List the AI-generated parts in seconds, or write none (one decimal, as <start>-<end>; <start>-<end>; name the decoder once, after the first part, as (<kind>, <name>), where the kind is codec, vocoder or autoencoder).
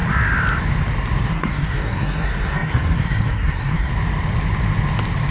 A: 1.3-3.9 (codec, SNAC)